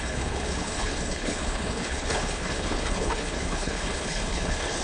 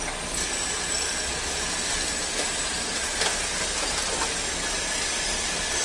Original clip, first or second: second